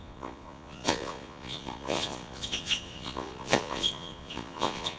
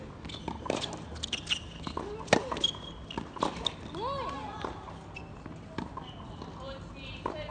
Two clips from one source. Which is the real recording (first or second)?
second